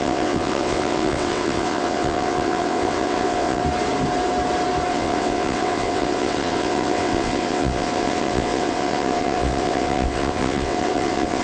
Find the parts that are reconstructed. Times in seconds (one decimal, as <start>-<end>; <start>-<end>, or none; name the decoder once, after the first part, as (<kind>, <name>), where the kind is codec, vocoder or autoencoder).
0.0-3.6 (vocoder, WaveNeXt); 4.9-11.4